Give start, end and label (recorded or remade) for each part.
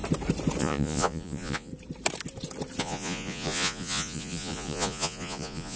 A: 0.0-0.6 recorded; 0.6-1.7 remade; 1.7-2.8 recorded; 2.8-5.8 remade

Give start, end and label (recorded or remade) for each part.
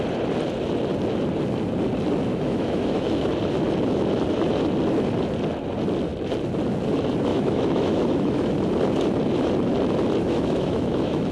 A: 0.0-2.3 recorded; 2.3-3.3 remade; 3.3-7.3 recorded; 7.3-8.5 remade; 8.5-10.2 recorded; 10.2-11.3 remade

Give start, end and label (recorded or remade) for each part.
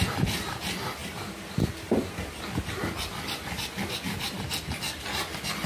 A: 0.0-5.7 recorded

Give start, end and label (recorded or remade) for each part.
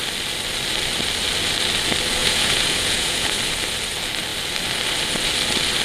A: 0.0-2.2 recorded; 2.2-3.4 remade; 3.4-5.8 recorded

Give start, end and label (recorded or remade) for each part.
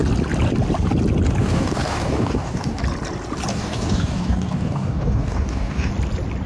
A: 0.0-1.4 recorded; 1.4-2.8 remade; 2.8-3.5 recorded; 3.5-5.9 remade; 5.9-6.5 recorded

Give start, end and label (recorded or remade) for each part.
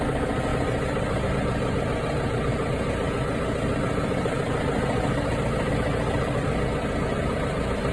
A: 0.0-0.5 remade; 0.5-1.3 recorded; 1.3-2.5 remade; 2.5-5.7 recorded; 5.7-7.9 remade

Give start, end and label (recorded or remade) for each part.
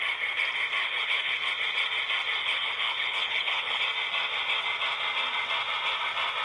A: 0.0-0.8 recorded; 0.8-1.5 remade; 1.5-2.4 recorded; 2.4-3.8 remade; 3.8-6.4 recorded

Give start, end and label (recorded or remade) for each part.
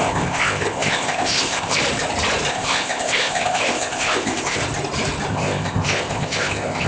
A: 0.0-1.8 remade; 1.8-2.5 recorded; 2.5-4.6 remade; 4.6-5.3 recorded; 5.3-6.9 remade